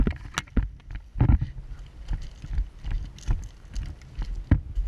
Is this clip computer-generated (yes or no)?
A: no